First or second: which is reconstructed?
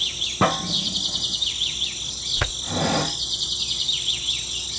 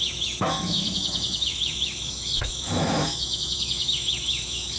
second